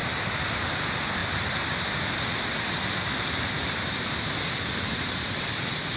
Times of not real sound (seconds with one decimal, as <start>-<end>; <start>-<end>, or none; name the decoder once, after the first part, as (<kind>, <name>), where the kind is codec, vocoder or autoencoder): 0.5-1.2 (vocoder, BigVGAN v2); 4.8-6.0